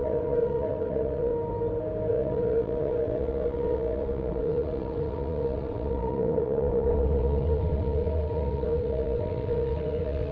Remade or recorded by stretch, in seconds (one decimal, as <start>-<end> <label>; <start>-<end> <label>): 0.0-1.3 remade; 1.3-2.1 recorded; 2.1-10.3 remade